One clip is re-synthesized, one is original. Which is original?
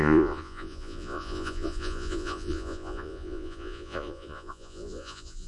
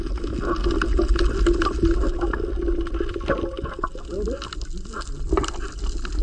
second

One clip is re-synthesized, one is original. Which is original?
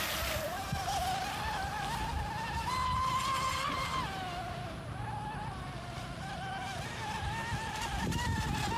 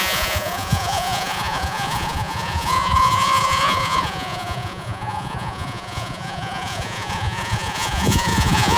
first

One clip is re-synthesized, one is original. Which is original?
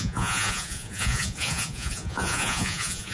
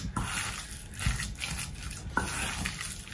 second